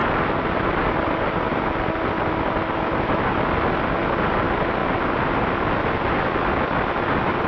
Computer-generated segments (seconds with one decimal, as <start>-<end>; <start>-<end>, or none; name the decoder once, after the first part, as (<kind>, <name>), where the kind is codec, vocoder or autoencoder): none